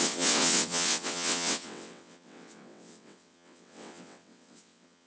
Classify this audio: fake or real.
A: fake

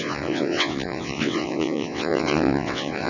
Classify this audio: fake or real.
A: fake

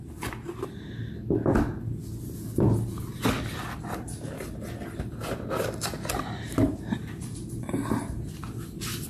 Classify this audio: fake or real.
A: real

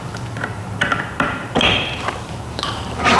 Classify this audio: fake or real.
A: fake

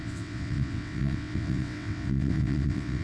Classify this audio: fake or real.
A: fake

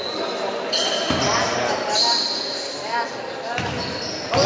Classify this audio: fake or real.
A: real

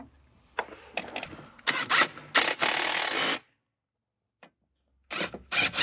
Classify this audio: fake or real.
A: real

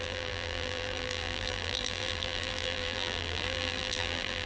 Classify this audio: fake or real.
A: fake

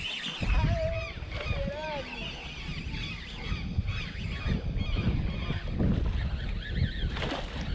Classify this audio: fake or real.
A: real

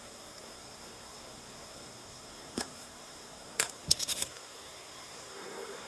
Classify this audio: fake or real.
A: fake